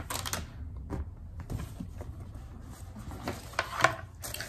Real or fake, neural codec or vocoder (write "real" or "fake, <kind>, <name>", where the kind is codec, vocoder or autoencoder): real